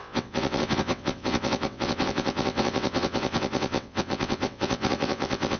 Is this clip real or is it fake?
fake